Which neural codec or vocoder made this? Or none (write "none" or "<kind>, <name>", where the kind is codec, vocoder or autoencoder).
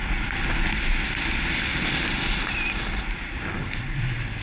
none